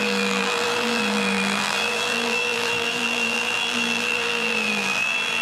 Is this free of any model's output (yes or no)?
no